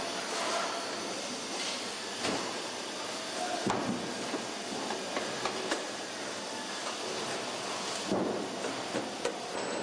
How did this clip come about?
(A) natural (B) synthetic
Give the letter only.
A